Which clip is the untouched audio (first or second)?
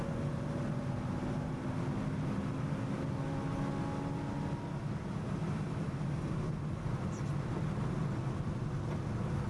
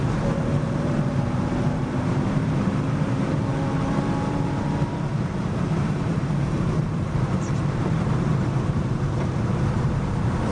first